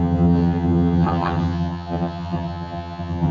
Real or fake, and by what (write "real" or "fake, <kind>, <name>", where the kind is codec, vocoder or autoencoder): fake, vocoder, HiFi-GAN